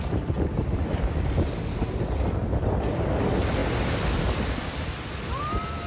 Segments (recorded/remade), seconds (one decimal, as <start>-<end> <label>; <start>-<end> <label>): 0.0-5.9 recorded